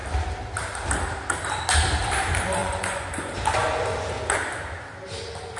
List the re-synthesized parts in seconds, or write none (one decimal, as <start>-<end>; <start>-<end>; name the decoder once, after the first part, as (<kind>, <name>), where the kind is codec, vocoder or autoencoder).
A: 2.6-3.3 (vocoder, Vocos)